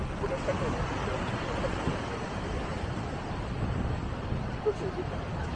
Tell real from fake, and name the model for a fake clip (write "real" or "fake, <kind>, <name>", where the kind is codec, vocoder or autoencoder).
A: real